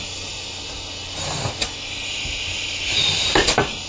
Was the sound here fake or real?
real